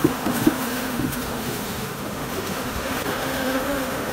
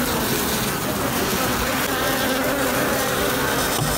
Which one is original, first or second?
second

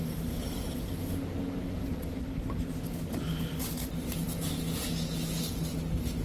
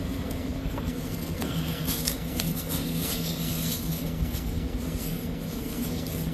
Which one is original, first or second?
first